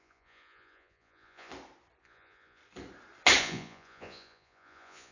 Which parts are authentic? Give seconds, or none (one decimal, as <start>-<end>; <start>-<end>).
1.5-2.0; 2.6-3.4